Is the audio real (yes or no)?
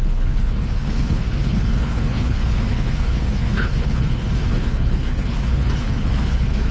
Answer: no